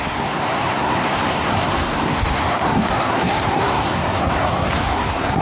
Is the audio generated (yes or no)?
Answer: yes